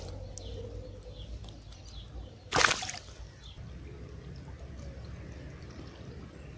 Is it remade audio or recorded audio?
recorded